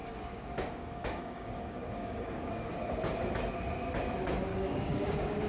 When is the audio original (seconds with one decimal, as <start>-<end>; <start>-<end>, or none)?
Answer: 2.7-4.5